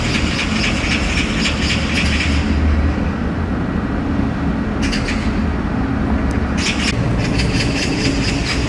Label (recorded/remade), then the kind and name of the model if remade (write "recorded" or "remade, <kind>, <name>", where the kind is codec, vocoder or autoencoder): recorded